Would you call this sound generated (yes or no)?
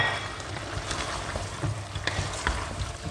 no